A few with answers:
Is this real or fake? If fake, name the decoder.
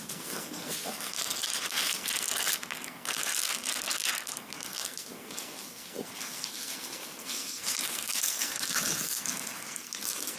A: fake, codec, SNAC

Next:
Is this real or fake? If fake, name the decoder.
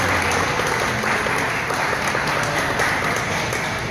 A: real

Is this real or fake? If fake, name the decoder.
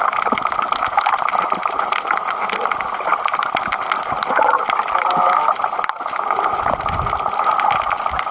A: real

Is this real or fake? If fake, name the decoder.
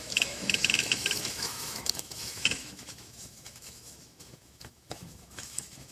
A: fake, autoencoder, DAC-VAE